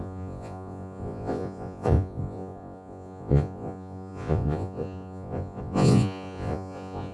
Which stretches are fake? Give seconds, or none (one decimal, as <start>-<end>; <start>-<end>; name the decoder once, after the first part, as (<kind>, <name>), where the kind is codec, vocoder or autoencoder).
0.0-7.1 (vocoder, Vocos)